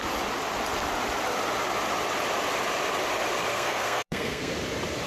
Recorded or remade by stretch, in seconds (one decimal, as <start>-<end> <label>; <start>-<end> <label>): 0.0-3.5 recorded; 3.5-4.5 remade; 4.5-5.1 recorded